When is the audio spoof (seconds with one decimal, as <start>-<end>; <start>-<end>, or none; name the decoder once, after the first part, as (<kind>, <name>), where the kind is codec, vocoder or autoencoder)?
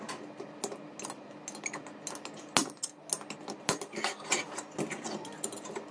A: none